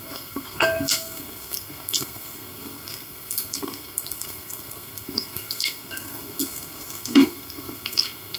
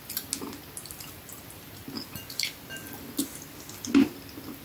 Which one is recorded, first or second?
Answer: second